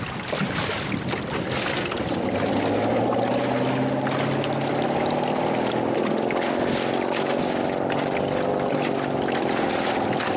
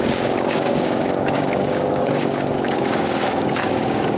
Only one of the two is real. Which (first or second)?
first